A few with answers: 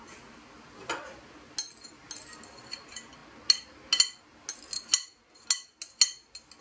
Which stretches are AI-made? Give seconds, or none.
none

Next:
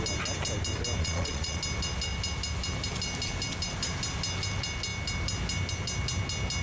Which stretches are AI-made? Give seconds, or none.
1.0-1.6 (vocoder, Vocos)

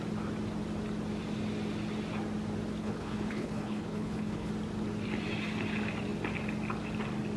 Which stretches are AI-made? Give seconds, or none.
2.8-4.5 (codec, HILCodec)

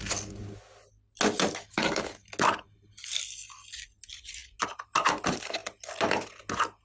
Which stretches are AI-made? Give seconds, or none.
none

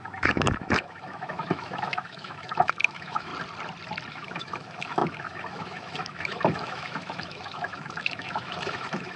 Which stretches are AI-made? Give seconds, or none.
0.0-3.3 (autoencoder, DAC-VAE); 4.1-9.2

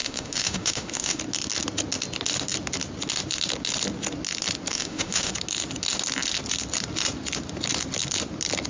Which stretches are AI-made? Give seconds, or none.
0.0-1.2 (autoencoder, DAC-VAE); 4.7-5.3

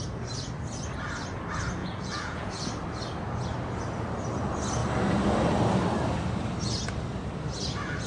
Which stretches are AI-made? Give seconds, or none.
1.8-2.5 (vocoder, Vocos)